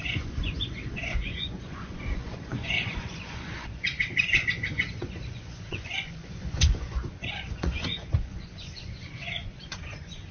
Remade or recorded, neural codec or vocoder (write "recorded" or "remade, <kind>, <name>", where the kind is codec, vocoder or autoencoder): remade, vocoder, Vocos